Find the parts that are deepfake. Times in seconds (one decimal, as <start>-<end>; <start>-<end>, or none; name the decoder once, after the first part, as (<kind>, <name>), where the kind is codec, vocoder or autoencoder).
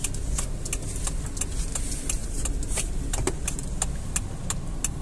none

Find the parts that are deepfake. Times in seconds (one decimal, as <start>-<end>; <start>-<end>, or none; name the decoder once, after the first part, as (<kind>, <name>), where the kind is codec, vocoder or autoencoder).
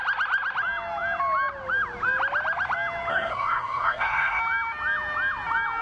3.1-4.4 (codec, SNAC)